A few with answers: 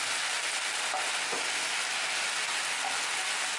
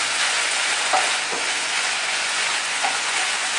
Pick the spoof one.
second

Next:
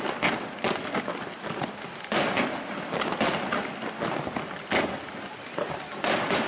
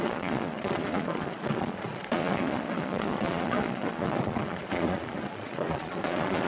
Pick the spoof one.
second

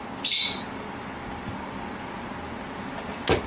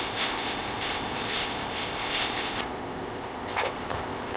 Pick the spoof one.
second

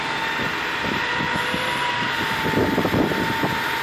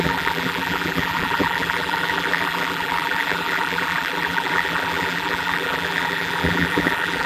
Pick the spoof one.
second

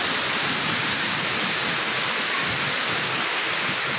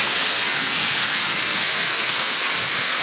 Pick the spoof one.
second